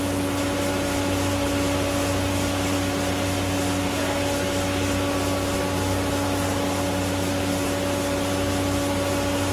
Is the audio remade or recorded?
recorded